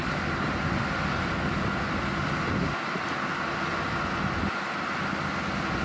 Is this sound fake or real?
real